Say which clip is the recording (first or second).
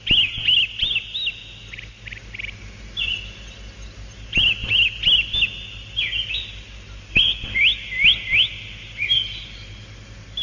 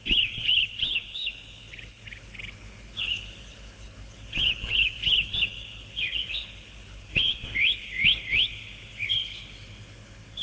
first